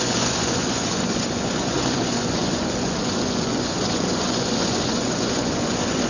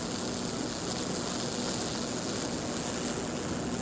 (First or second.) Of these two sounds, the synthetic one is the first